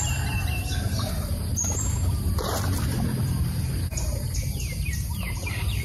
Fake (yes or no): yes